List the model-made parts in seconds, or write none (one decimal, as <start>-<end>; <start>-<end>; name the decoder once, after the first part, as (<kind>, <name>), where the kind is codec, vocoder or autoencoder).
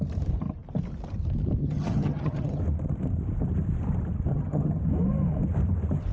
1.6-2.6 (vocoder, HiFi-GAN); 4.3-4.8